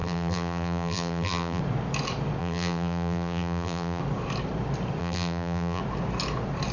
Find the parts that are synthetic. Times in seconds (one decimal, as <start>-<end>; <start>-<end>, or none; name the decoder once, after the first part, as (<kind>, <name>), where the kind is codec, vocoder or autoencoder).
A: 0.0-1.6 (vocoder, BigVGAN v2); 2.4-4.0; 5.0-5.8